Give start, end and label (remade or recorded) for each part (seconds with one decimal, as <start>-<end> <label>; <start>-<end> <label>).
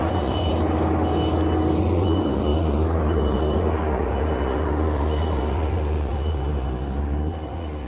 0.0-0.5 remade; 0.5-1.8 recorded; 1.8-7.9 remade